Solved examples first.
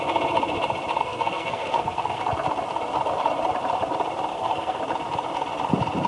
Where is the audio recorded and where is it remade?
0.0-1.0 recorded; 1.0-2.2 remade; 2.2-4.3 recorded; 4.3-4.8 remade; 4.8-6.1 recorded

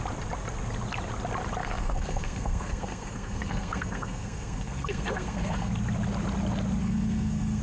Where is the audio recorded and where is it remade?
0.0-1.6 recorded; 1.6-5.7 remade; 5.7-6.8 recorded; 6.8-7.6 remade

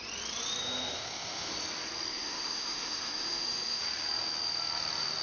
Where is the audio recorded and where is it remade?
0.0-0.6 recorded; 0.6-1.5 remade; 1.5-2.1 recorded; 2.1-3.8 remade; 3.8-5.2 recorded

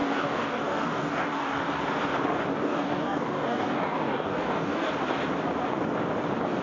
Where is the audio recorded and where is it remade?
0.0-1.6 remade; 1.6-2.5 recorded; 2.5-4.9 remade; 4.9-6.6 recorded

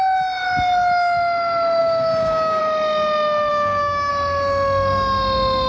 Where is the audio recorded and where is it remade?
0.0-1.8 recorded; 1.8-2.6 remade; 2.6-3.5 recorded; 3.5-4.1 remade; 4.1-5.7 recorded

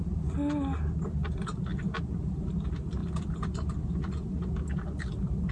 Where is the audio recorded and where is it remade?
0.0-5.5 recorded

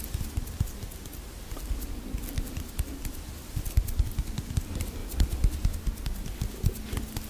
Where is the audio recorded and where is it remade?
0.0-7.3 recorded